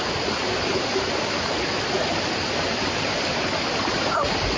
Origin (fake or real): real